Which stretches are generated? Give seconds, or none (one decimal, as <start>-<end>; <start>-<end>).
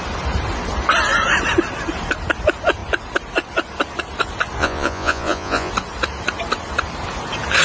4.6-5.7